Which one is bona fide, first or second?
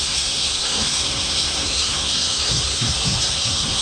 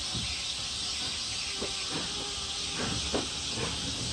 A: second